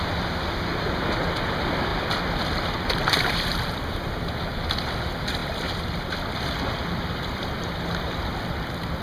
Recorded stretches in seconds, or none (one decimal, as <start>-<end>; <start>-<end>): 0.0-1.9; 4.2-5.4; 6.0-6.8; 8.5-9.0

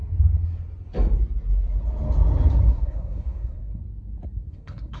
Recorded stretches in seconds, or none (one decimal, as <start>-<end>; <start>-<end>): 0.0-2.7; 3.8-4.5

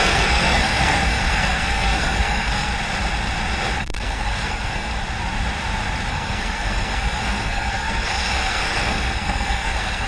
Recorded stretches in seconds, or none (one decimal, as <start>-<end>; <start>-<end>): 2.7-3.8; 4.9-6.1

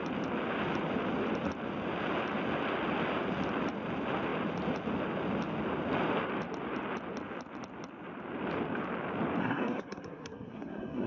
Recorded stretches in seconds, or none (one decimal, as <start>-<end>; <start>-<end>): 0.0-9.4

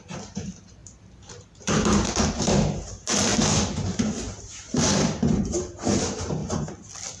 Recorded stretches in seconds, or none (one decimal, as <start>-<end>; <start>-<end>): 3.3-4.4; 6.4-7.2

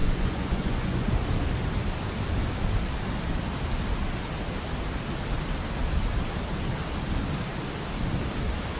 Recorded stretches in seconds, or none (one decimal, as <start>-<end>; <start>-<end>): 1.1-8.8

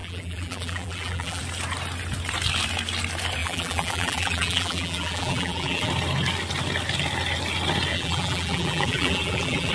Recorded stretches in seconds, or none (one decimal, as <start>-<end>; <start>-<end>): 1.4-3.4; 5.9-7.9

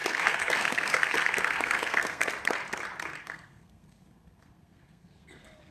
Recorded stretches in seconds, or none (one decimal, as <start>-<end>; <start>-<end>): 2.3-3.2